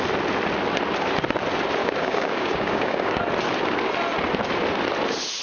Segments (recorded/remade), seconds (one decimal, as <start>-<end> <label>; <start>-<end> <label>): 0.0-1.8 recorded; 1.8-3.2 remade; 3.2-5.4 recorded